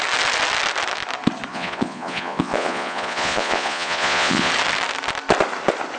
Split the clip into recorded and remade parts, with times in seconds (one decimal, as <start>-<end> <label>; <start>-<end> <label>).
0.0-1.5 recorded; 1.5-4.5 remade; 4.5-6.0 recorded